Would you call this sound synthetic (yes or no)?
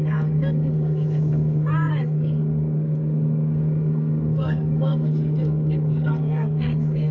yes